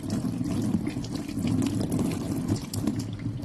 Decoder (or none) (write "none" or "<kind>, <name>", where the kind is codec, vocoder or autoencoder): none